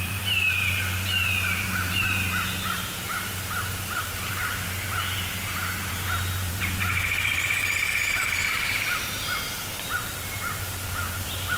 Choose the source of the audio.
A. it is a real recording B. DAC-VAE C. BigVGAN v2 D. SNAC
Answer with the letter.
C